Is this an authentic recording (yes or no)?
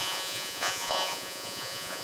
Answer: no